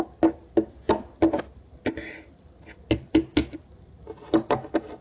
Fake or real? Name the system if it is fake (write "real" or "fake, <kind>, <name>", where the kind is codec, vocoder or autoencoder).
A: real